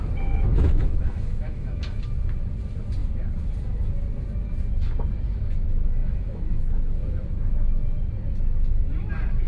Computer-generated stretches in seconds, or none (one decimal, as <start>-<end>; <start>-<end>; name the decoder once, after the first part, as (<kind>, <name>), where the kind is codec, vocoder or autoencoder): 0.5-2.0 (autoencoder, DAC-VAE); 6.0-6.6